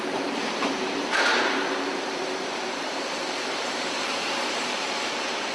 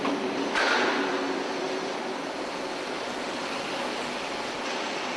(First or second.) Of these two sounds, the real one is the second